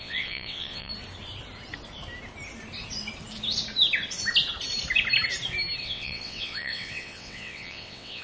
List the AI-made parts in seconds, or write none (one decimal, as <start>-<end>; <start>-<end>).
0.0-0.9; 5.8-8.2